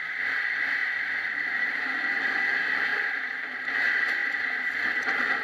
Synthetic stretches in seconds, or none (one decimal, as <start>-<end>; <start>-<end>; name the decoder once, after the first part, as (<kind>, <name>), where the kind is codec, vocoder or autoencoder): none